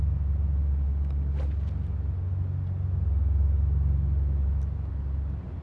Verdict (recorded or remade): recorded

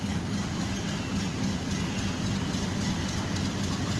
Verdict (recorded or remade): recorded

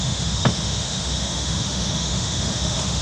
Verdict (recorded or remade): remade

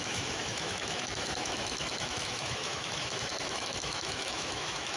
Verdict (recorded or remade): remade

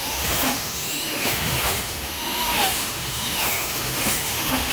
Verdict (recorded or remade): remade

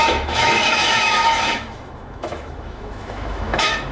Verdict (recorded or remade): remade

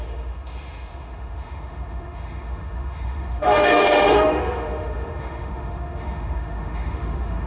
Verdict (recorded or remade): remade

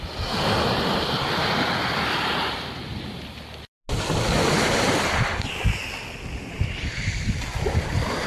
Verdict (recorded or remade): recorded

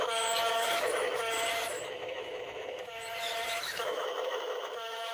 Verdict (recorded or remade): remade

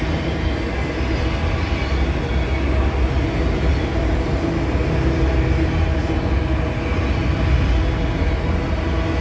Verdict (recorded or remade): recorded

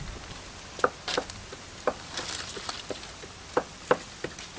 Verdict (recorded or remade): recorded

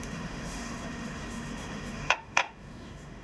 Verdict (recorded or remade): remade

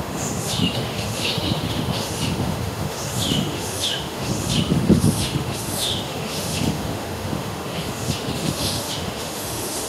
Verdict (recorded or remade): remade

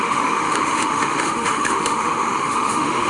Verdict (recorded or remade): remade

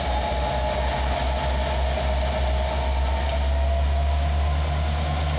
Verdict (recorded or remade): recorded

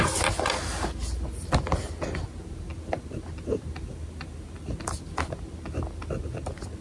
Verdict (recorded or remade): recorded